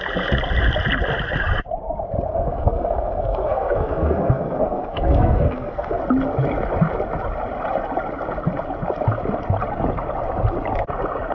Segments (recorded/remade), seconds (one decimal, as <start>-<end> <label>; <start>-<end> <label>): 0.0-2.3 recorded; 2.3-6.0 remade; 6.0-11.3 recorded